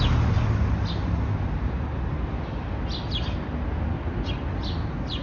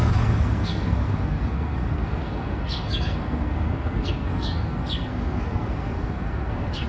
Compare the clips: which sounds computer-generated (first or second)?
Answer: second